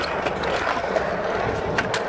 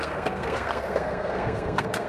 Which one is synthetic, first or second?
second